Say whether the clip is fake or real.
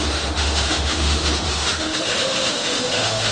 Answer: fake